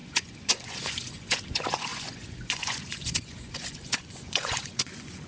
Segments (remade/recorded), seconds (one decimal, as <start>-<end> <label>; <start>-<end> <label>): 0.0-5.3 remade